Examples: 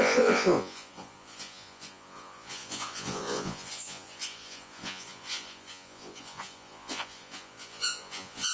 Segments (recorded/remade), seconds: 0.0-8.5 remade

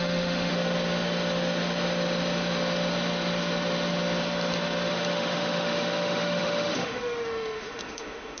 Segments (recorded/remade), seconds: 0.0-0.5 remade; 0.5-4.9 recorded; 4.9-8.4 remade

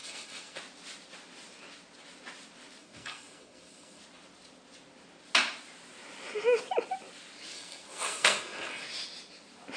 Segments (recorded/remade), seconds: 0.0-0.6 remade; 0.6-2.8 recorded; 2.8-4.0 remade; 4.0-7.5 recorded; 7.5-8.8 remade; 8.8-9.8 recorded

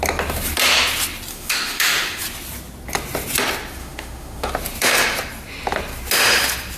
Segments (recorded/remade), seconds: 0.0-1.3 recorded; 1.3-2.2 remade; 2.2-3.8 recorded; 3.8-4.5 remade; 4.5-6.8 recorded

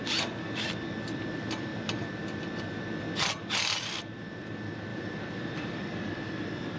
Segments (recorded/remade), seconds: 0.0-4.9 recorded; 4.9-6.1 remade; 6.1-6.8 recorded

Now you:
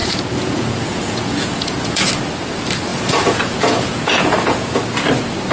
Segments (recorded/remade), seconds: 0.0-2.1 remade; 2.1-2.9 recorded; 2.9-4.7 remade; 4.7-5.5 recorded